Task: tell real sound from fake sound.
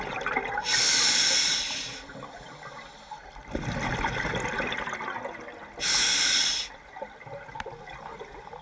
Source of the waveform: real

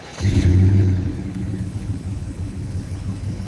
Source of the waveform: fake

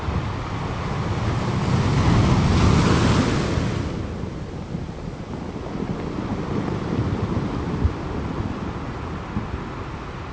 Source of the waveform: real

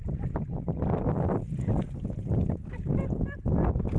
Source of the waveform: real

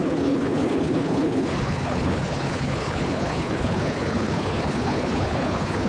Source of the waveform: fake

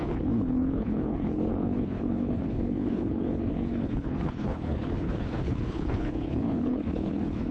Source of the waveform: fake